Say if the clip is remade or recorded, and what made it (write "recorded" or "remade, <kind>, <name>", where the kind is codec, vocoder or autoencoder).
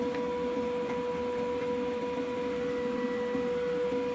recorded